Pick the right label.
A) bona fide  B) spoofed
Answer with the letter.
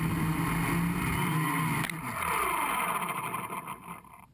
A